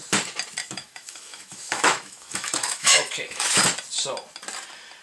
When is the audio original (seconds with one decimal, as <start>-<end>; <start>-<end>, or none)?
0.0-0.6; 3.6-5.0